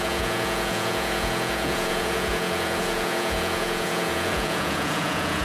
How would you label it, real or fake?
fake